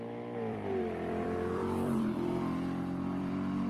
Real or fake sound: fake